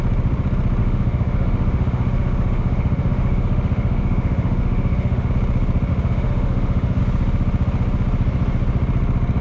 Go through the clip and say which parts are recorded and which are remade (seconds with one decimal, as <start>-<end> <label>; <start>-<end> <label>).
0.0-0.8 recorded; 0.8-5.3 remade; 5.3-5.9 recorded; 5.9-7.0 remade; 7.0-9.4 recorded